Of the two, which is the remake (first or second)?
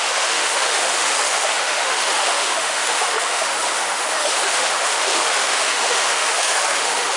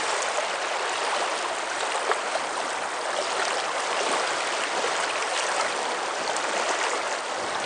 first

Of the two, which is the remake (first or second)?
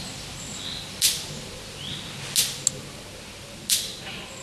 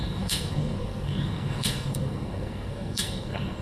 second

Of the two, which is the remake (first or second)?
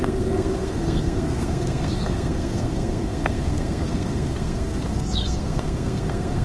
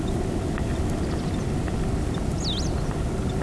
first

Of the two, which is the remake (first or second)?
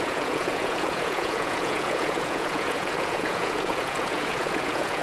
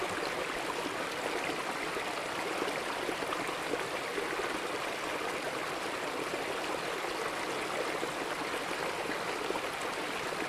first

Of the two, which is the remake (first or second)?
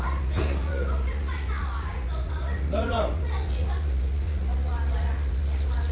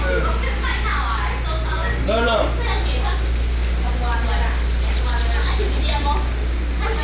first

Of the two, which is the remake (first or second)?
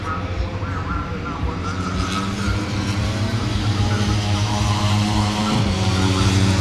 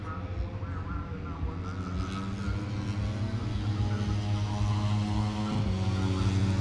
first